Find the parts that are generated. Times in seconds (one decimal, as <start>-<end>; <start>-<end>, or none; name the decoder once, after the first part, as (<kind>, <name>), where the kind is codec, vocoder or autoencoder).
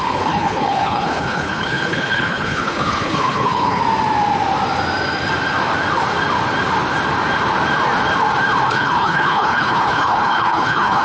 0.0-3.8 (codec, HILCodec); 8.7-11.0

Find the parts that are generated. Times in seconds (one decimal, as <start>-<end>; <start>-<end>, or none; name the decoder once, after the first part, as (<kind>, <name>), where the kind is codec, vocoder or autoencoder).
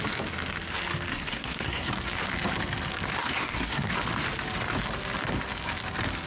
1.1-1.9 (codec, SNAC); 3.2-3.9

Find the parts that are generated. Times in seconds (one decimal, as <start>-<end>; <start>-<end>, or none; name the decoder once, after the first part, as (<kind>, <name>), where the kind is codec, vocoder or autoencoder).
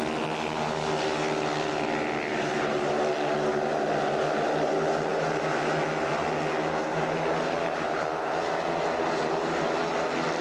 2.3-3.0 (vocoder, BigVGAN v2); 6.9-9.6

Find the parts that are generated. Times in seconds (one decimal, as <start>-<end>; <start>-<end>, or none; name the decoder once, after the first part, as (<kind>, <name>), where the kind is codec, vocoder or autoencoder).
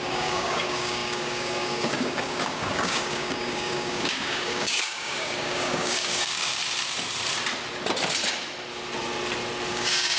0.0-6.6 (codec, DAC); 9.7-10.2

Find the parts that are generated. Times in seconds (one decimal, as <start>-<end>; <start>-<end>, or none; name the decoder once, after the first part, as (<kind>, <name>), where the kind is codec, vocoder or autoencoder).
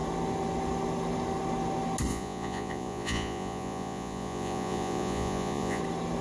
2.1-5.8 (vocoder, Vocos)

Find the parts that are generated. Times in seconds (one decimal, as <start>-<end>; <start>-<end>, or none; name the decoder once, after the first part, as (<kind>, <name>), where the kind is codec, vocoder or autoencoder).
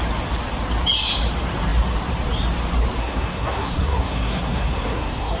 3.0-5.4 (codec, SNAC)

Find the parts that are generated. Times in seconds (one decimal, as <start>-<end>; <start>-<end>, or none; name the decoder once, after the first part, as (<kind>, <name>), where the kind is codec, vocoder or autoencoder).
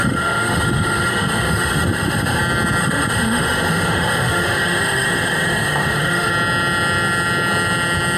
0.0-2.4 (autoencoder, DAC-VAE); 2.8-6.3